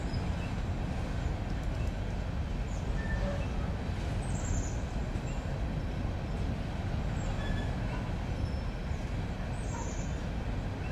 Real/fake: real